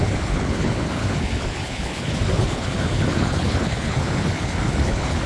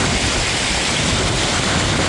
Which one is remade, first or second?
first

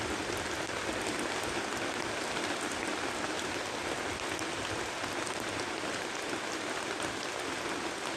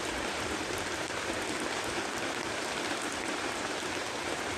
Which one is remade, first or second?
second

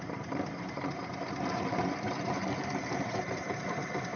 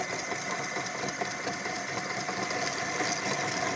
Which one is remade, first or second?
first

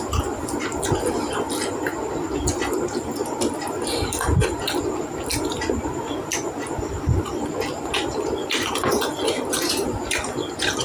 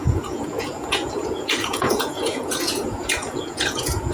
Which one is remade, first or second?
second